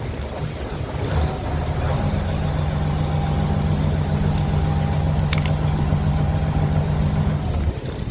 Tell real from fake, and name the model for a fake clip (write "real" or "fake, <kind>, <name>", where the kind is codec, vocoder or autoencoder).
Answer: real